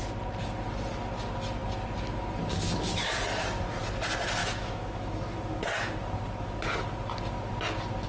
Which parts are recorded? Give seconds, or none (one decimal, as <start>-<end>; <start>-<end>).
0.0-4.4; 5.4-8.1